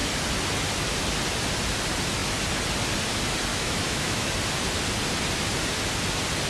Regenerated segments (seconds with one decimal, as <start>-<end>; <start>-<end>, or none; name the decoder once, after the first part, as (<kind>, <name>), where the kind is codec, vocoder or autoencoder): 3.5-4.3 (autoencoder, DAC-VAE)